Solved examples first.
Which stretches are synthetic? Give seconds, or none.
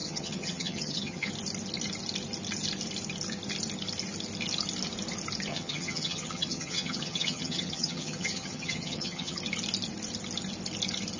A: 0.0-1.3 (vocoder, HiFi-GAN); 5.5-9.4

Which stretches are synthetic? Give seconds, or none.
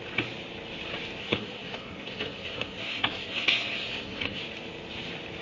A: 1.2-4.4 (codec, SNAC)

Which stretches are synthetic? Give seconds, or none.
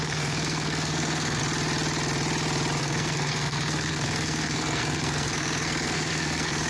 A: 0.0-1.4 (codec, SNAC); 2.8-6.7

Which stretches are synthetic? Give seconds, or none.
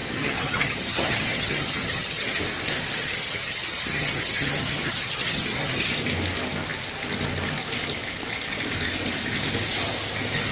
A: 0.0-2.4 (vocoder, HiFi-GAN); 3.0-5.9